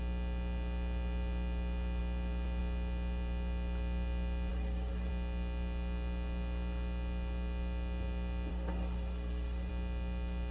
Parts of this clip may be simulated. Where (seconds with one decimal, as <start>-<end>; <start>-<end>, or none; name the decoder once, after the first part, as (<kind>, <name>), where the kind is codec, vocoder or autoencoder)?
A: 4.5-5.1 (codec, SNAC); 8.5-9.7

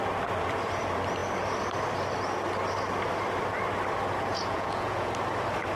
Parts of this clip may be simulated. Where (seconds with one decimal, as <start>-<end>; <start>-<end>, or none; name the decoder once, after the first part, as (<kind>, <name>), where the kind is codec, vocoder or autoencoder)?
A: 4.3-5.1 (vocoder, Vocos)

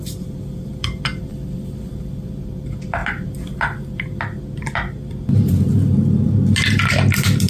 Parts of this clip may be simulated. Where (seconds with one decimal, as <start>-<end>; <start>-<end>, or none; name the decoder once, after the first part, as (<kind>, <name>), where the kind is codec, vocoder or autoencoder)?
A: 1.3-1.9 (vocoder, BigVGAN v2)

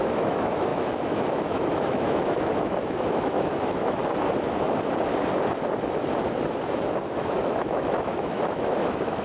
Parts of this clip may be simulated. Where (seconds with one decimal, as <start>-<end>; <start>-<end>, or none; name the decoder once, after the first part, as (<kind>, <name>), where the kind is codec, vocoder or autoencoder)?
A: 0.0-4.0 (autoencoder, DAC-VAE); 7.1-9.2

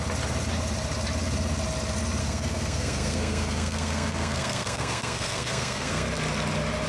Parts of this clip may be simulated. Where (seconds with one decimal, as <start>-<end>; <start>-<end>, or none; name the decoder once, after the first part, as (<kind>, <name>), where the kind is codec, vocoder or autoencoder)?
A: 2.2-6.1 (codec, SNAC)

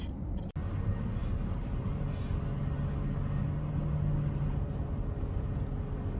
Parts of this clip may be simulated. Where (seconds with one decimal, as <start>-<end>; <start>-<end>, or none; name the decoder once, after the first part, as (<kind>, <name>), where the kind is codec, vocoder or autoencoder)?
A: none

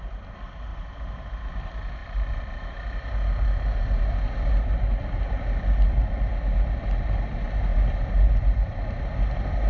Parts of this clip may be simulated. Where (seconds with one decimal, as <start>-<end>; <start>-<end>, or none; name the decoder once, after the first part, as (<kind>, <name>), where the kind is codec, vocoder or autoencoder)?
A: 0.7-1.4 (vocoder, BigVGAN v2); 2.0-2.8